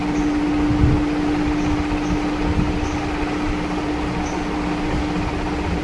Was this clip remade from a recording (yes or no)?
no